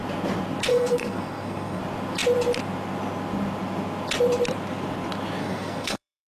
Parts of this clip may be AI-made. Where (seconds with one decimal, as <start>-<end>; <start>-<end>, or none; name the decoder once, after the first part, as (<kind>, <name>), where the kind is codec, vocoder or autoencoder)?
0.7-1.8 (codec, SNAC); 5.4-6.3